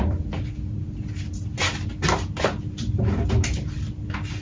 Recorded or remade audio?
recorded